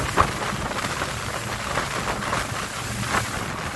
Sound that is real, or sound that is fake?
real